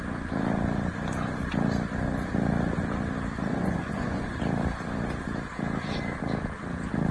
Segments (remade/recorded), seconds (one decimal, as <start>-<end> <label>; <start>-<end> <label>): 0.0-3.5 recorded; 3.5-4.4 remade; 4.4-7.1 recorded